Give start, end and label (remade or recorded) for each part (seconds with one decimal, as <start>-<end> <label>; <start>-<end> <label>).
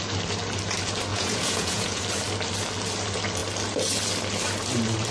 0.0-1.1 recorded; 1.1-2.0 remade; 2.0-5.1 recorded